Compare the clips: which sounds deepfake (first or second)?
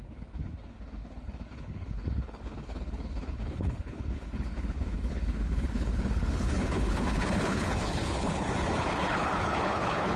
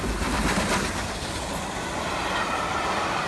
first